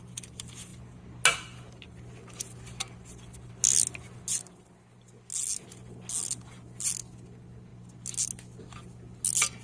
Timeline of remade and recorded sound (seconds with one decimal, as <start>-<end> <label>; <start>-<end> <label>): 0.0-9.6 recorded